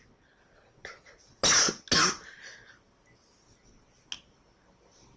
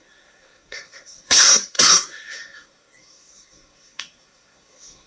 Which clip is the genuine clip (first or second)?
first